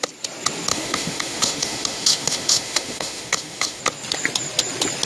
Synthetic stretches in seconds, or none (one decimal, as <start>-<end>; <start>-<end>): 0.7-3.8